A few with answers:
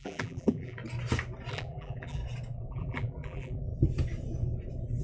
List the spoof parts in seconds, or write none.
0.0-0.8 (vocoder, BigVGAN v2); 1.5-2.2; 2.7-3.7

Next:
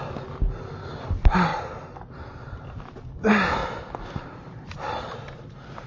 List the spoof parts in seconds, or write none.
1.5-2.4 (vocoder, BigVGAN v2); 3.6-5.9

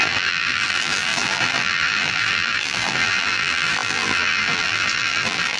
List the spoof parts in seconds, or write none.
0.0-5.6 (vocoder, BigVGAN v2)

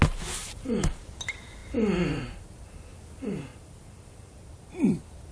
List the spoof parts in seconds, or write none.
0.4-1.2 (vocoder, BigVGAN v2); 3.5-4.7

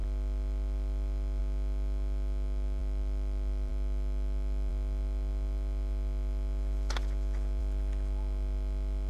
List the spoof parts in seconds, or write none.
0.0-1.4 (vocoder, BigVGAN v2); 2.8-3.7

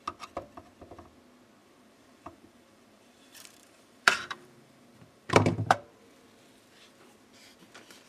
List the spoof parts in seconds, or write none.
1.6-5.8 (vocoder, BigVGAN v2)

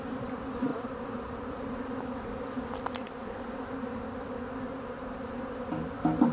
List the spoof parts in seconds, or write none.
0.7-4.5 (vocoder, BigVGAN v2)